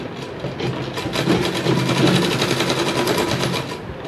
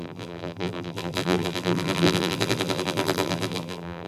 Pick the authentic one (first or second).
first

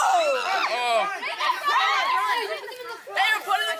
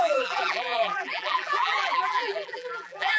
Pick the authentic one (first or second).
first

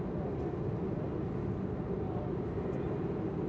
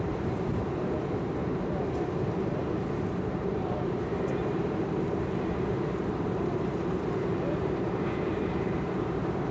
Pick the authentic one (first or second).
first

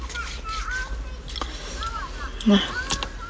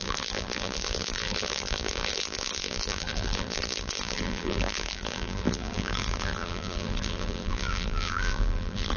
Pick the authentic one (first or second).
first